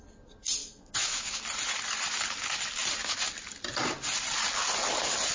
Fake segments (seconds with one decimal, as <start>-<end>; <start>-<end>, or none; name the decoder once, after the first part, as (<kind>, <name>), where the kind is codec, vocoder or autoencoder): 0.6-1.4 (autoencoder, DAC-VAE)